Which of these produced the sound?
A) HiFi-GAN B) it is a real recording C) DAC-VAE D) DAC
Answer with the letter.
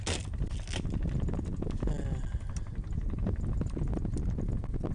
B